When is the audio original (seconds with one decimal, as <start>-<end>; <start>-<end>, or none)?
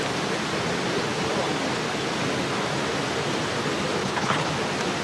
0.0-4.0; 4.5-5.0